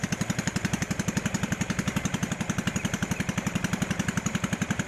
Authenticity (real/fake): fake